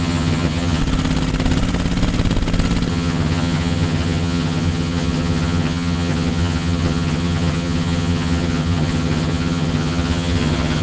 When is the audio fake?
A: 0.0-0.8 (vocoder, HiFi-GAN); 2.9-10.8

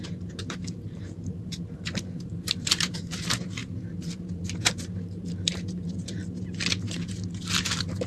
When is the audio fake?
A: 0.0-6.2 (vocoder, BigVGAN v2); 7.6-8.1

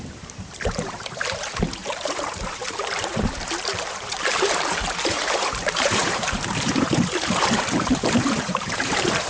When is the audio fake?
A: 0.0-9.3 (vocoder, BigVGAN v2)

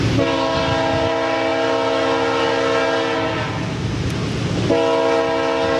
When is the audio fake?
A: none